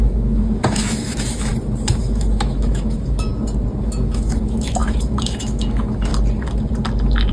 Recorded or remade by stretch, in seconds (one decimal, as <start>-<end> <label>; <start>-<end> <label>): 0.0-1.5 remade; 1.5-2.0 recorded; 2.0-3.3 remade; 3.3-3.8 recorded; 3.8-6.1 remade; 6.1-7.3 recorded